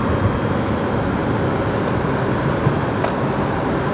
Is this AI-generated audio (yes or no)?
no